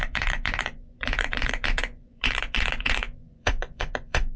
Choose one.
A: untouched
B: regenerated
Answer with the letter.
B